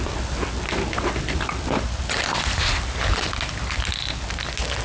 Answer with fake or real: real